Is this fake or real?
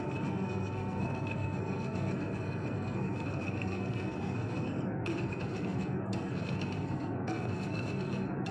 fake